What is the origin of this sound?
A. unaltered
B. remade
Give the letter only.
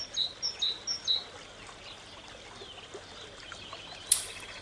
A